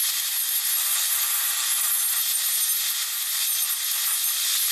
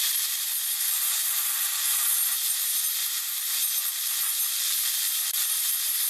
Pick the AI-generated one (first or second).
second